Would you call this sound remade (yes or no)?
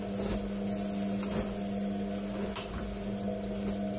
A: no